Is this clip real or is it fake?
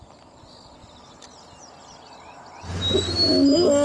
real